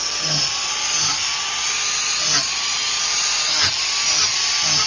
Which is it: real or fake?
real